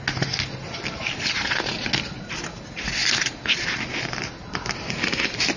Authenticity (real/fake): real